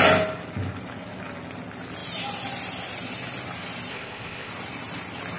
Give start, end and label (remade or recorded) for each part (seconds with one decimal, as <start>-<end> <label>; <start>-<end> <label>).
0.0-3.9 recorded; 3.9-4.5 remade; 4.5-5.4 recorded